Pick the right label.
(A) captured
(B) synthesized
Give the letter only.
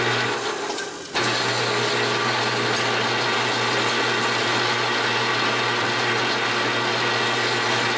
A